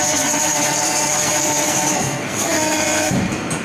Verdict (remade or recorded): remade